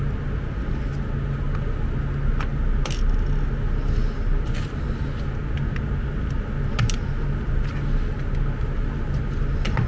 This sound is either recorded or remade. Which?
recorded